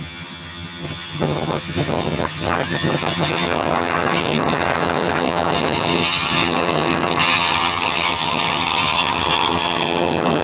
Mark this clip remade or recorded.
remade